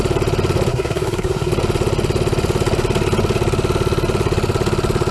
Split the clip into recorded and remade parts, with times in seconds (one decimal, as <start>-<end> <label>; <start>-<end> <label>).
0.0-0.7 recorded; 0.7-1.5 remade; 1.5-5.1 recorded